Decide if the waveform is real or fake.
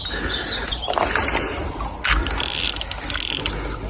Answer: real